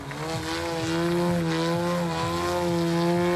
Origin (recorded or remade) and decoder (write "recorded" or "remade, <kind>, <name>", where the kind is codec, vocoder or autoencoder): recorded